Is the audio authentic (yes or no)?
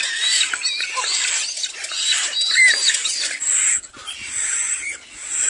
yes